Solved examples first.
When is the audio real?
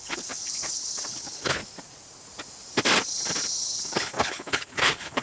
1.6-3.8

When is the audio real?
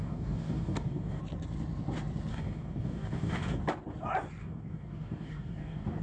1.2-2.3; 3.6-4.4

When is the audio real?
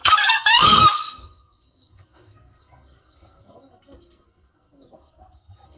none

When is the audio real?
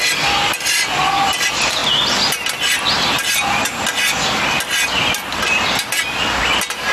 0.0-6.9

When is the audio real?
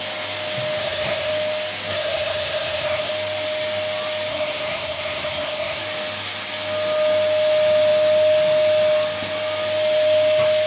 0.0-0.8; 1.3-1.9; 3.1-4.3; 5.8-10.7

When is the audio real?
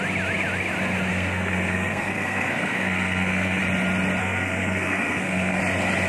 0.0-1.1; 3.6-4.2; 5.6-6.1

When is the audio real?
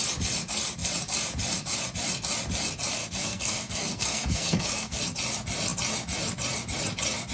0.0-3.0; 5.0-7.3